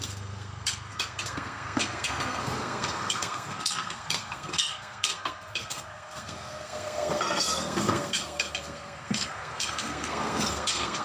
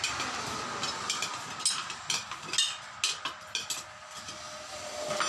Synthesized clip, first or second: first